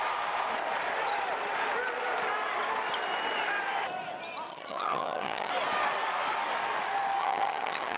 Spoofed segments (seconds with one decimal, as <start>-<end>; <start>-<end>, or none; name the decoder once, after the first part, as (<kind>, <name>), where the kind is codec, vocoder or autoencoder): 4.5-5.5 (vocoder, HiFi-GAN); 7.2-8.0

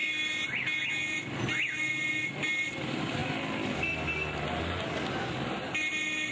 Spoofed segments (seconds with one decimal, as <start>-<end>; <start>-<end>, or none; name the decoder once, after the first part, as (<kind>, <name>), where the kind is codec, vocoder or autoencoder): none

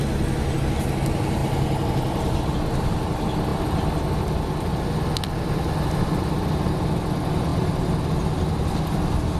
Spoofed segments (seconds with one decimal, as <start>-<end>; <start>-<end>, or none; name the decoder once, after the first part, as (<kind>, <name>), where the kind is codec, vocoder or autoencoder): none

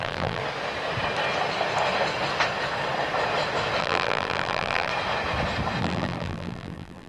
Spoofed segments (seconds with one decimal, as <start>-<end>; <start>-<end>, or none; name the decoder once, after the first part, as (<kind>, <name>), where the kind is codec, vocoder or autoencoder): 0.0-0.4 (vocoder, BigVGAN v2); 3.8-4.9; 5.8-7.1